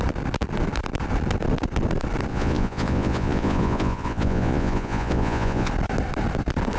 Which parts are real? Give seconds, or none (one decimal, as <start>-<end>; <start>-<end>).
0.0-2.3; 5.7-6.8